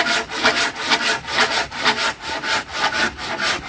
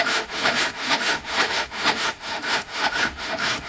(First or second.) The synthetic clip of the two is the second